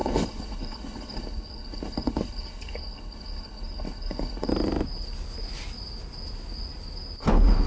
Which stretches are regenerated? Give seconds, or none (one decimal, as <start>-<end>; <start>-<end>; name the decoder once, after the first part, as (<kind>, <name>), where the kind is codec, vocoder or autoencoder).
0.0-4.5 (codec, HILCodec)